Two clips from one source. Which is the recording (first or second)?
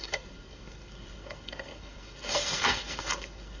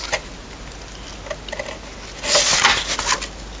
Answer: second